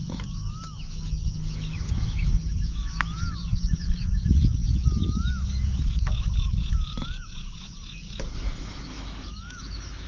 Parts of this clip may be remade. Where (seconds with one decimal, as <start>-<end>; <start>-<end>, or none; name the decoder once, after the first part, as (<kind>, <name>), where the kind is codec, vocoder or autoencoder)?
0.0-10.1 (autoencoder, DAC-VAE)